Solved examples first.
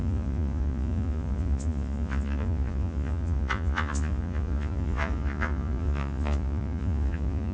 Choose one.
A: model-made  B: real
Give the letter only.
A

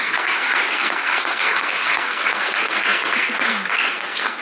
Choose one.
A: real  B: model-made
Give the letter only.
B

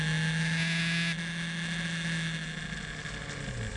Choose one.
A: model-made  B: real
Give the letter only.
B